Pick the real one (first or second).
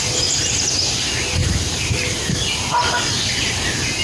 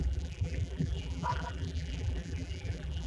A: first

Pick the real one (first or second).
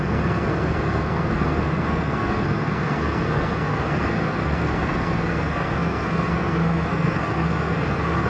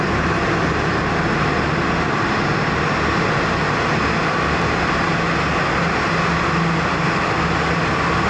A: second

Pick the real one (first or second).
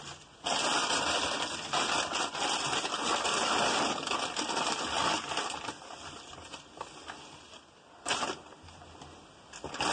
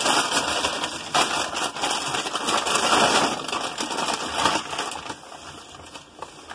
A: second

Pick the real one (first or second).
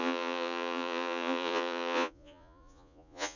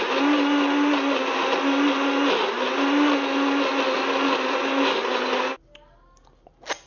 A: second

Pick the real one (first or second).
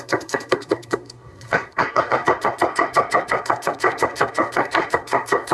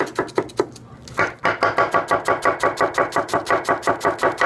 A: second